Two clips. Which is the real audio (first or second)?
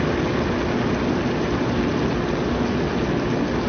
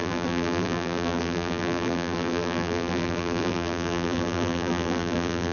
first